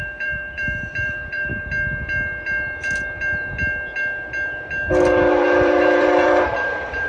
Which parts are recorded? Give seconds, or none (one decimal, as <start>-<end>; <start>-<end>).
1.5-5.0